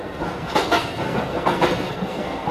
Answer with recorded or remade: remade